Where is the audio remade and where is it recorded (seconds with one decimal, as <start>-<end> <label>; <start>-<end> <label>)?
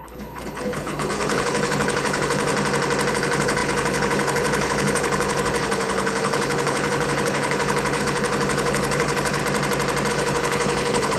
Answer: 0.0-2.5 remade; 2.5-3.1 recorded; 3.1-9.4 remade; 9.4-10.1 recorded; 10.1-11.2 remade